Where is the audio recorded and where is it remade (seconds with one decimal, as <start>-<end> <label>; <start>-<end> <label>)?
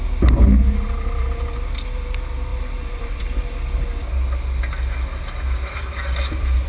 0.0-2.5 recorded; 2.5-3.2 remade; 3.2-5.2 recorded; 5.2-6.0 remade; 6.0-6.7 recorded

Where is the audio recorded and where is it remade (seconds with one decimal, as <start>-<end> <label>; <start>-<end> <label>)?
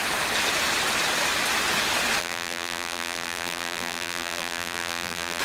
0.0-2.2 recorded; 2.2-5.4 remade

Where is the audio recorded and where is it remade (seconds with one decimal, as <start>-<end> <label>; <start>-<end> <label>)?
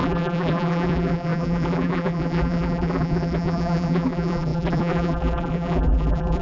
0.0-6.4 remade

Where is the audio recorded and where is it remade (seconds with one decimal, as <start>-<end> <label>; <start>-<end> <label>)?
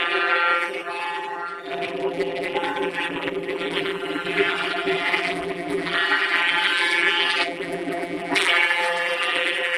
0.0-9.8 remade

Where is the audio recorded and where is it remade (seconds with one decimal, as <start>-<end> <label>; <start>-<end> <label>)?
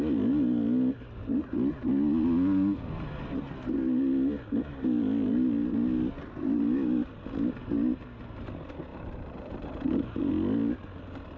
0.0-8.9 recorded; 8.9-10.3 remade; 10.3-11.4 recorded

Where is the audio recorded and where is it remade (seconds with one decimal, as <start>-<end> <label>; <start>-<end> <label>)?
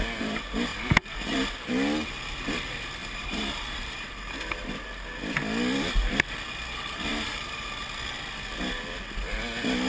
0.0-0.7 recorded; 0.7-1.7 remade; 1.7-3.0 recorded; 3.0-4.7 remade; 4.7-7.1 recorded; 7.1-7.7 remade; 7.7-9.9 recorded